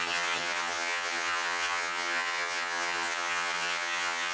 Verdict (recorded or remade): remade